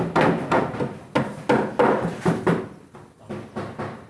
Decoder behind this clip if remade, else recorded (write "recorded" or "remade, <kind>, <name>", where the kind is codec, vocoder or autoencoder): recorded